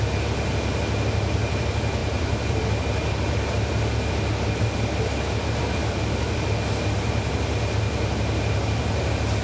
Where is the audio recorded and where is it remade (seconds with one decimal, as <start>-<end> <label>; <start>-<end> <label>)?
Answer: 0.0-2.0 recorded; 2.0-2.6 remade; 2.6-9.4 recorded